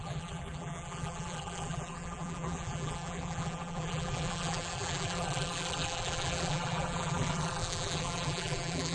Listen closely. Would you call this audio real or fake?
fake